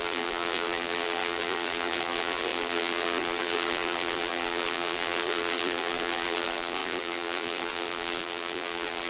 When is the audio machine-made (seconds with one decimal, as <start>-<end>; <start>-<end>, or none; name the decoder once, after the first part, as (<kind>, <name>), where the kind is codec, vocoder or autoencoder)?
0.0-9.1 (vocoder, BigVGAN v2)